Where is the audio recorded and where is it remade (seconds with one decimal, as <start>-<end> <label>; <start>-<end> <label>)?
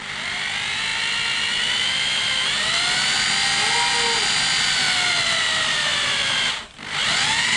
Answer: 0.0-7.6 recorded